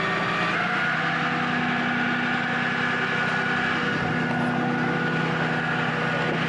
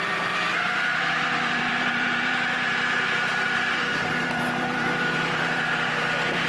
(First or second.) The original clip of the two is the first